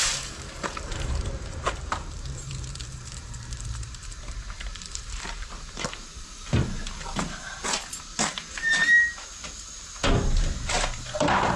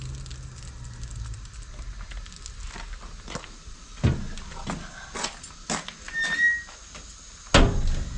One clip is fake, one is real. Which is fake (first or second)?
first